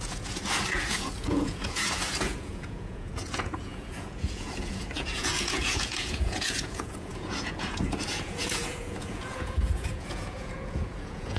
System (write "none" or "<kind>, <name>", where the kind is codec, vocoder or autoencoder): vocoder, Vocos